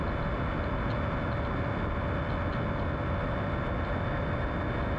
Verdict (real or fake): real